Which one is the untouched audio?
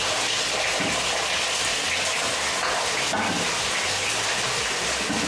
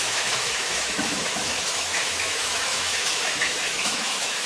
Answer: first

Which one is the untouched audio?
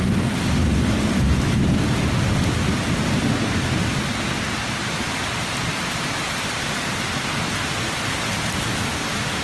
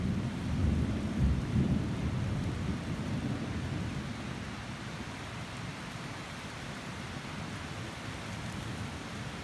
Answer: first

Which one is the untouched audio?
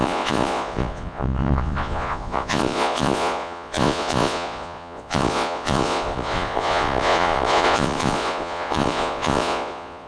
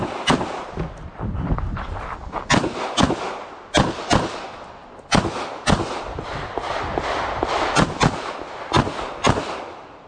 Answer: second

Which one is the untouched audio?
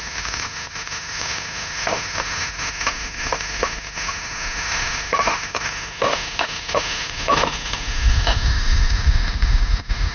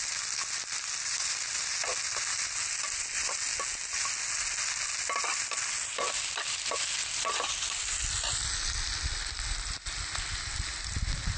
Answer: second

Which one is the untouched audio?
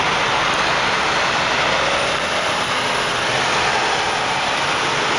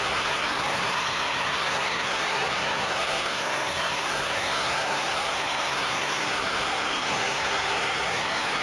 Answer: first